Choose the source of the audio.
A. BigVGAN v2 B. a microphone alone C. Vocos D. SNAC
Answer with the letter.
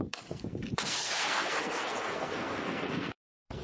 D